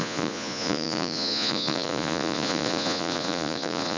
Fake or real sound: fake